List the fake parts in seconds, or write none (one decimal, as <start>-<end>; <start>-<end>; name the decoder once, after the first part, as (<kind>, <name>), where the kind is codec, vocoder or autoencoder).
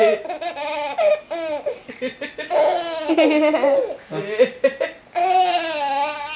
none